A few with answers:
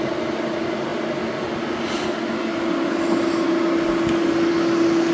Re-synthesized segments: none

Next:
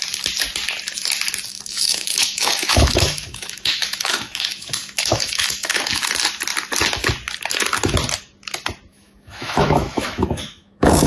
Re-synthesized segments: 1.5-6.0 (autoencoder, DAC-VAE); 8.9-11.1

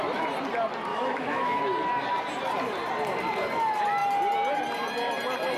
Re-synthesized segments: 0.9-1.6 (autoencoder, DAC-VAE)

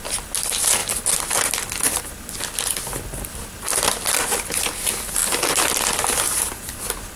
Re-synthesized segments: 3.7-4.4 (vocoder, BigVGAN v2)

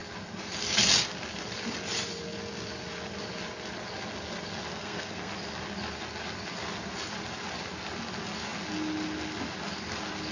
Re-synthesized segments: 4.7-5.3 (codec, SNAC)